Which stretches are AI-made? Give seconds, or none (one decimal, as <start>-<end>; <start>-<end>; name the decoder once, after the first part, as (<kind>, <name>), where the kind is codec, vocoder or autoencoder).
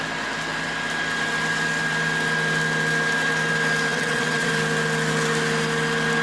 3.9-4.5 (vocoder, WaveNeXt)